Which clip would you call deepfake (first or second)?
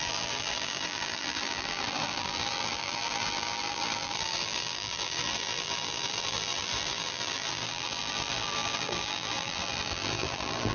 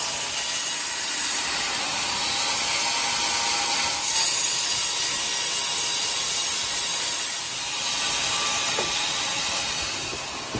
first